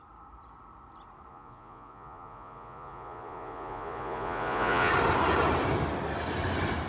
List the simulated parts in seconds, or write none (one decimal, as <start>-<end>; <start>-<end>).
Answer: 1.3-4.9